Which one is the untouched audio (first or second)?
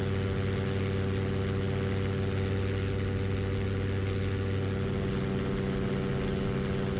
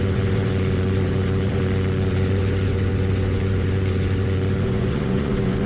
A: first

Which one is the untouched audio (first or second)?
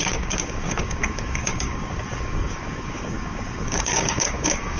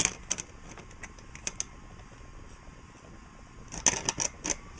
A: second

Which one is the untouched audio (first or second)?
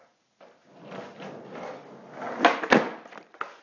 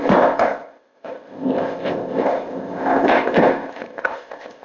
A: first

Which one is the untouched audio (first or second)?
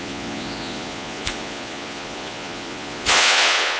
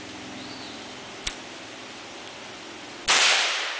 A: second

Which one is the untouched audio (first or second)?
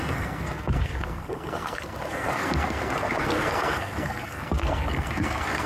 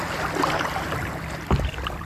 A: second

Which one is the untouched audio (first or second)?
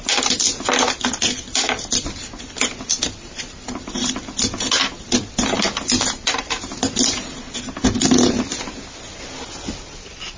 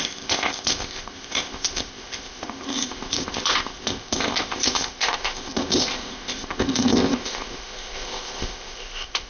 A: first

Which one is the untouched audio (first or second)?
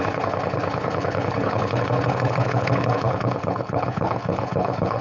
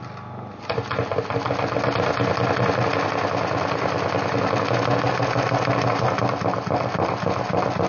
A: second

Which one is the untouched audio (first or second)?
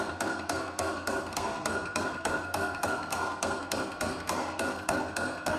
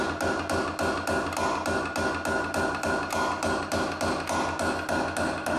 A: second